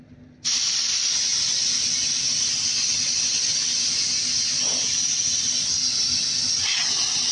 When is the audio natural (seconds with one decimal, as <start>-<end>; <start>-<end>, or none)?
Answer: 0.0-7.3